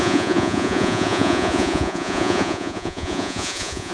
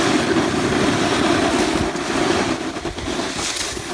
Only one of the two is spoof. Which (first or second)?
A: first